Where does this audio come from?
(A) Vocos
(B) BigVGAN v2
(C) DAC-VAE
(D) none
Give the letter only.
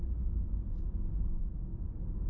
D